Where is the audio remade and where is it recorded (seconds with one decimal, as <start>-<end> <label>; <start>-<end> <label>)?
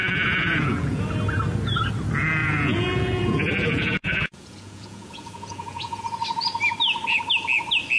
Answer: 0.0-1.0 remade; 1.0-2.4 recorded; 2.4-6.0 remade; 6.0-8.0 recorded